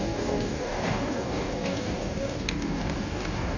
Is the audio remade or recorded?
remade